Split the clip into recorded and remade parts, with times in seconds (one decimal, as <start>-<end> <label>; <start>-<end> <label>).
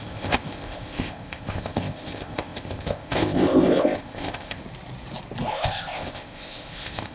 0.0-4.6 remade; 4.6-5.5 recorded; 5.5-7.1 remade